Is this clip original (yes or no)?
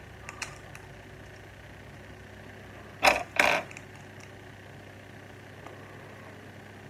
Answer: yes